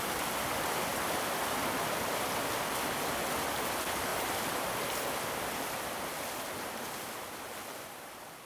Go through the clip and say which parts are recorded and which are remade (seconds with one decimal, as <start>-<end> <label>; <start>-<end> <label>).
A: 0.0-8.5 recorded

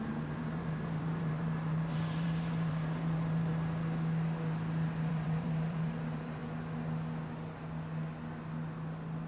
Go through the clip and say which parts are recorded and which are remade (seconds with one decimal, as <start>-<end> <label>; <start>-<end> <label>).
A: 0.0-3.5 remade; 3.5-5.1 recorded; 5.1-6.4 remade; 6.4-9.3 recorded

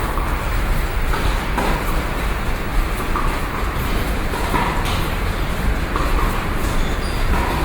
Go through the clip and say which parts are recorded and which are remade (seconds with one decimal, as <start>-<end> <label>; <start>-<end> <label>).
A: 0.0-7.6 recorded